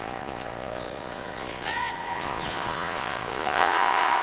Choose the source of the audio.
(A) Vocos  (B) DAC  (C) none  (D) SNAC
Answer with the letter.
A